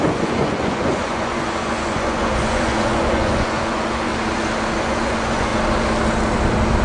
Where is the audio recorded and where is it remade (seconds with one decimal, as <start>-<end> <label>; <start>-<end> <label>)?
0.0-4.1 remade; 4.1-4.8 recorded; 4.8-5.5 remade; 5.5-6.8 recorded